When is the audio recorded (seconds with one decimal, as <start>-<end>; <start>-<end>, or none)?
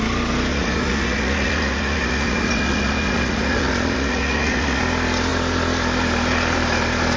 0.0-0.5; 4.8-7.2